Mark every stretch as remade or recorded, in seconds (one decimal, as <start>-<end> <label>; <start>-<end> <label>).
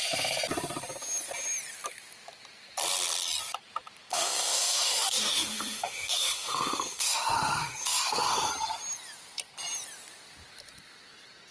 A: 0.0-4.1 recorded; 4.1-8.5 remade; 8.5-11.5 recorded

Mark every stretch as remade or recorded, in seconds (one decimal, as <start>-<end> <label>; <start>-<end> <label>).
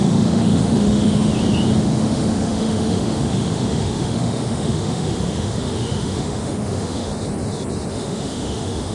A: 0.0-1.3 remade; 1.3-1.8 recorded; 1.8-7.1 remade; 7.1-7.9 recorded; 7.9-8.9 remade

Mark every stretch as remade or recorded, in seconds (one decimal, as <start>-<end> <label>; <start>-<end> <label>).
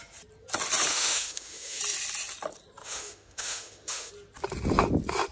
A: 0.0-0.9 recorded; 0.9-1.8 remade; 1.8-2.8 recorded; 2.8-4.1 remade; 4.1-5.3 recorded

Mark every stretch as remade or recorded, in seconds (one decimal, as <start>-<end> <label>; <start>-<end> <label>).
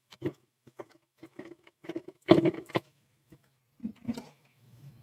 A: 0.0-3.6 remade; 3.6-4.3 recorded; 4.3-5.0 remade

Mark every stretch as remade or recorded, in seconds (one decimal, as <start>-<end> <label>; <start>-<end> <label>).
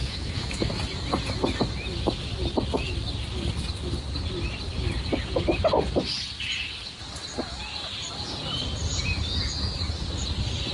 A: 0.0-0.7 remade; 0.7-10.7 recorded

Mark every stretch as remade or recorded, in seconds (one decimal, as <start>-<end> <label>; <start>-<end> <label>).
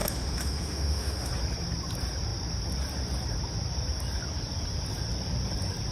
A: 0.0-1.3 remade; 1.3-5.9 recorded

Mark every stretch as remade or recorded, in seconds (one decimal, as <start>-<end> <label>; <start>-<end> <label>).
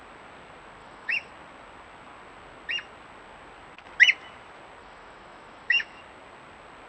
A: 0.0-0.8 recorded; 0.8-1.3 remade; 1.3-4.8 recorded; 4.8-6.0 remade; 6.0-6.9 recorded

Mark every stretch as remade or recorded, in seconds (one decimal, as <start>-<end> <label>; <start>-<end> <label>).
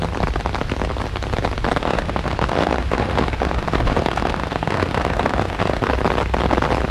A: 0.0-1.8 recorded; 1.8-5.9 remade; 5.9-6.9 recorded